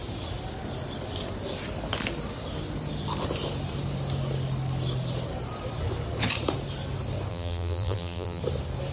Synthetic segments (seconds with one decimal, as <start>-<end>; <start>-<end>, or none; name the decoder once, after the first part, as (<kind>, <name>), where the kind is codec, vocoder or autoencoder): 7.3-8.4 (vocoder, BigVGAN v2)